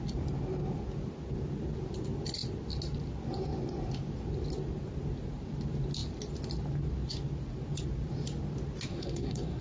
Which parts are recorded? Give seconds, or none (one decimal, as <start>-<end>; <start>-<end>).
0.0-8.9